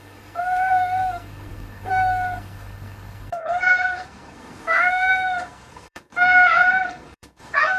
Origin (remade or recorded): remade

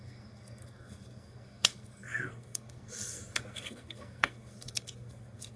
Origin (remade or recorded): remade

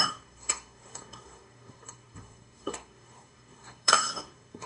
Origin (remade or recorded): remade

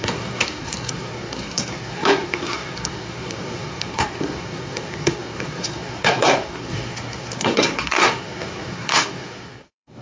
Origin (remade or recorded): remade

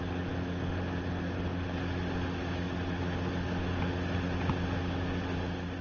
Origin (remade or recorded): recorded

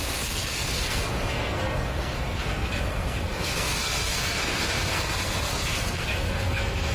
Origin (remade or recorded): remade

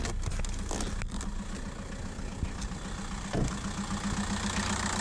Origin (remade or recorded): recorded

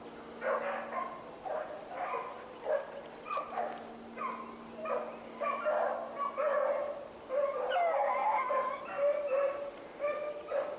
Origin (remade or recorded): recorded